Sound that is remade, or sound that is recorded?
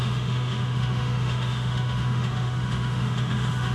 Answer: remade